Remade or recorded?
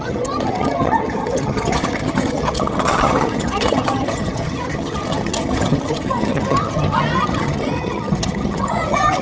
remade